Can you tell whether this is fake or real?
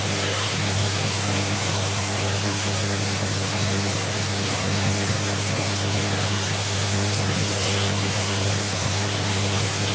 fake